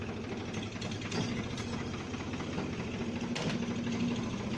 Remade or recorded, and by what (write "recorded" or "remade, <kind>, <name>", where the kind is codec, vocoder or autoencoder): recorded